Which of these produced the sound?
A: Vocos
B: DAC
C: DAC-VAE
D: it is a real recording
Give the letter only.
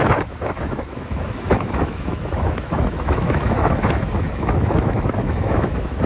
C